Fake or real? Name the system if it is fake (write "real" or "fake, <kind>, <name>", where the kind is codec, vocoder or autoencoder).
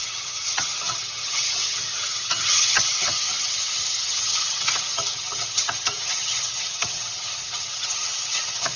fake, vocoder, HiFi-GAN